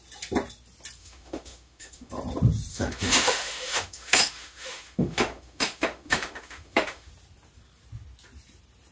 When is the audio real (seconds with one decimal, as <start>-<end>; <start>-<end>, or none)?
0.0-1.0; 2.1-2.7; 7.1-8.9